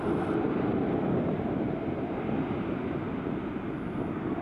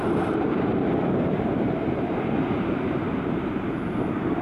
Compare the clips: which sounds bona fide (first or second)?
first